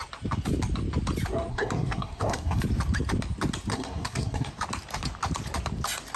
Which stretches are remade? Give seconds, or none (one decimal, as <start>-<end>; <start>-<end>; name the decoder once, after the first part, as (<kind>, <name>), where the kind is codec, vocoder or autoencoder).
1.5-2.6 (codec, SNAC); 3.7-4.5